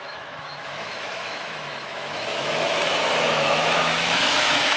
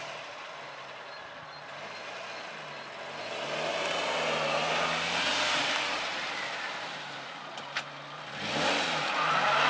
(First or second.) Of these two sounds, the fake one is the first